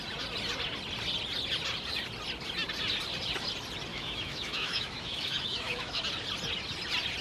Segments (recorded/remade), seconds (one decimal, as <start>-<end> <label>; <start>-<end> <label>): 0.0-3.9 recorded; 3.9-6.0 remade; 6.0-7.2 recorded